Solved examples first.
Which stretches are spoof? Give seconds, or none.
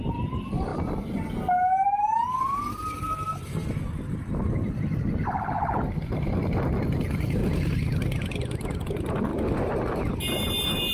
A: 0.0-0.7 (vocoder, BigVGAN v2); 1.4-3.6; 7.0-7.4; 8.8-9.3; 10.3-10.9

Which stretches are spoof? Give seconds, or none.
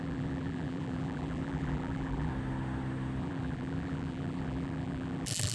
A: 0.0-2.3 (vocoder, BigVGAN v2); 3.2-5.5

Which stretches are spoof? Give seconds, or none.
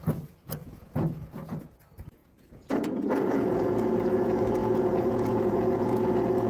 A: 0.0-6.5 (vocoder, Vocos)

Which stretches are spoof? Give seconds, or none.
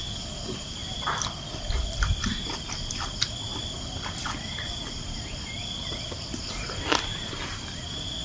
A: 0.0-8.2 (vocoder, BigVGAN v2)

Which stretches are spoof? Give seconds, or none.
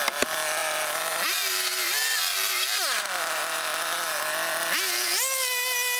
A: 0.6-4.2 (vocoder, BigVGAN v2)